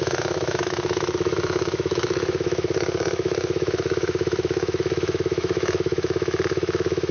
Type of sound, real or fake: fake